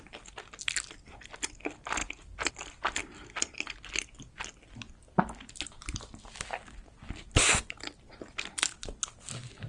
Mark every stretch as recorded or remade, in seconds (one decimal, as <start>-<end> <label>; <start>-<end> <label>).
0.0-9.7 recorded